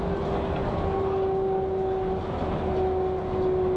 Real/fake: real